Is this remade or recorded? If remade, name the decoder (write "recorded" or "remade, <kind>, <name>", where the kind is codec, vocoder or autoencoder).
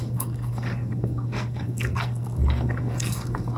remade, codec, SNAC